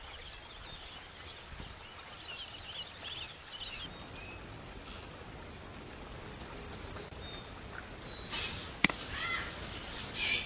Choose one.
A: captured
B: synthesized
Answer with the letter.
A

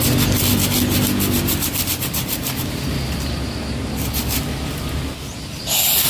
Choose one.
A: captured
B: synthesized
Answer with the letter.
A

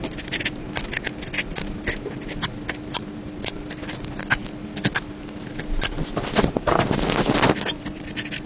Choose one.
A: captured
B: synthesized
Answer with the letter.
A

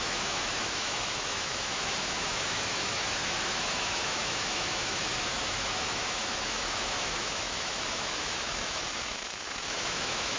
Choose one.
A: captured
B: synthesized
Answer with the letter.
B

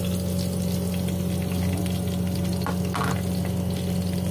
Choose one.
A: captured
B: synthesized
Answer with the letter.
A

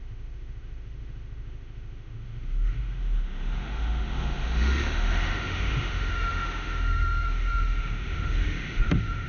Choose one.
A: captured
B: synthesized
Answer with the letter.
B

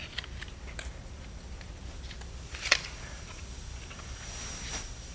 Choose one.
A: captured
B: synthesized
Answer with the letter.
A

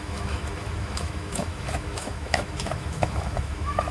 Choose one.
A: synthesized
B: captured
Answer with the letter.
A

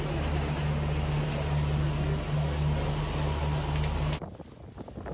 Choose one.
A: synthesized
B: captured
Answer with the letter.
B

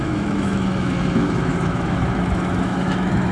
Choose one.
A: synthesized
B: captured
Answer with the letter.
A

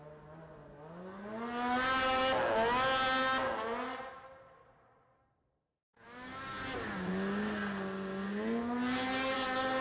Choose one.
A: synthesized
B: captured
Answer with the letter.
B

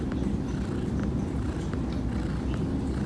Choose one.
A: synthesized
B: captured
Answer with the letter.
B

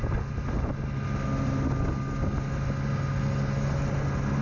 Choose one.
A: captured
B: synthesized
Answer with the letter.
A